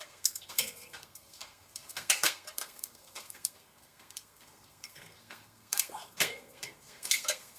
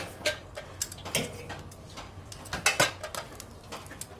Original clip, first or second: second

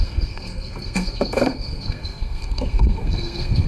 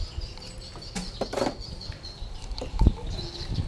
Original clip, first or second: second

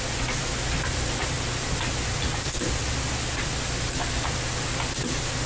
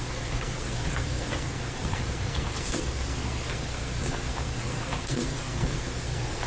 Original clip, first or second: first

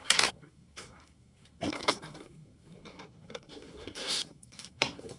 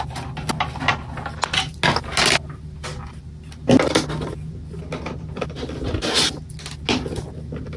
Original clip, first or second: second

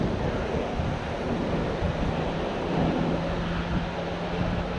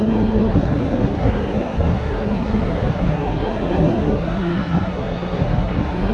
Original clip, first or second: first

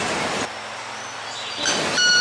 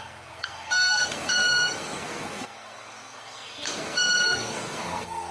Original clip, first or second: first